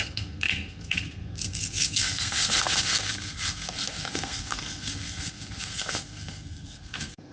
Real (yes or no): no